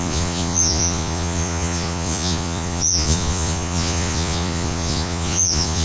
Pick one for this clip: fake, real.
fake